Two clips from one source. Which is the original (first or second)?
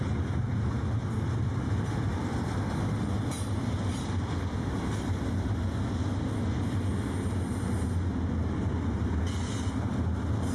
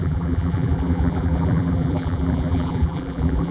first